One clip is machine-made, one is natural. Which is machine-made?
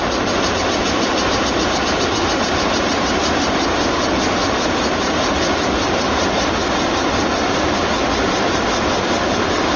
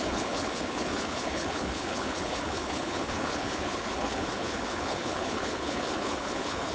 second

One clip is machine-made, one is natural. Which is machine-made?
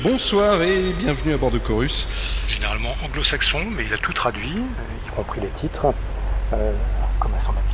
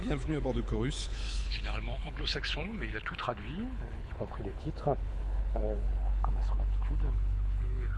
second